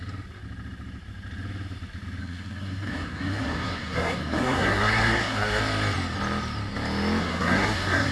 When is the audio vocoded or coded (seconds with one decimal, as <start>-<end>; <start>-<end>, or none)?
2.2-5.6; 7.2-8.1